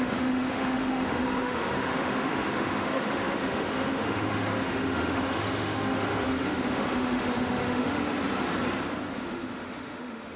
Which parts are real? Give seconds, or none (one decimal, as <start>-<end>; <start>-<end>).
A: 8.0-9.1